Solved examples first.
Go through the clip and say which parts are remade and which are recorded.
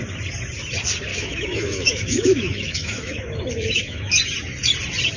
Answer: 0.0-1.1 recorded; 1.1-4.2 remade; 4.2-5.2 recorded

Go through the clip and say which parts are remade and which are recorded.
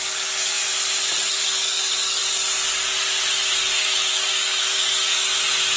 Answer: 0.0-0.6 remade; 0.6-1.3 recorded; 1.3-2.2 remade; 2.2-3.6 recorded; 3.6-5.3 remade; 5.3-5.8 recorded